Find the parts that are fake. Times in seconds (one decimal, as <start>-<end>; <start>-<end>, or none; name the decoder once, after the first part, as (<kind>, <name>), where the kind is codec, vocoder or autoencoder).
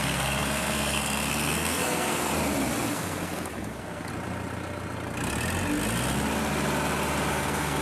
0.0-2.3 (codec, SNAC); 2.9-4.1; 7.3-7.8